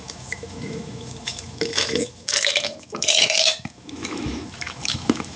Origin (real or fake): fake